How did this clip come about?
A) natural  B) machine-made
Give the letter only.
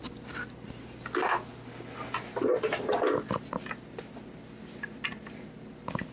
A